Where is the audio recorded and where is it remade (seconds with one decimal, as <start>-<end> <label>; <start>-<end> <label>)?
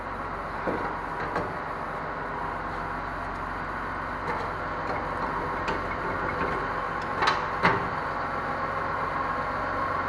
0.0-10.1 recorded